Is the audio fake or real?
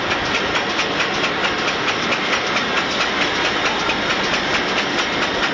real